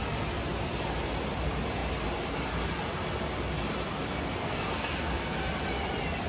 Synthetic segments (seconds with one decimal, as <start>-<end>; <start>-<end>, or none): 4.4-5.1